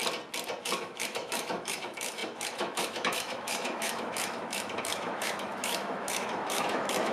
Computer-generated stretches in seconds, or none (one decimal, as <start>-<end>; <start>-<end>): 0.6-7.1